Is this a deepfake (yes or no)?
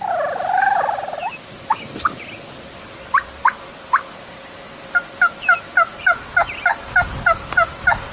no